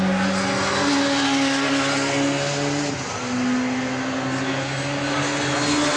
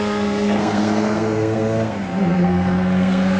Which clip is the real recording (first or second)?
first